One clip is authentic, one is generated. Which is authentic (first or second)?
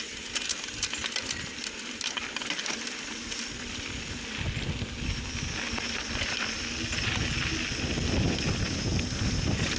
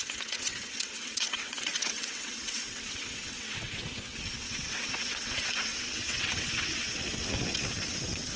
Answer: first